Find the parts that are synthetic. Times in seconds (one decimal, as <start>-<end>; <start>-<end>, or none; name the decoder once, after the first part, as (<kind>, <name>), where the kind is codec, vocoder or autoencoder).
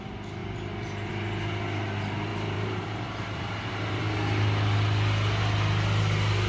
0.4-1.1 (vocoder, BigVGAN v2); 2.3-4.0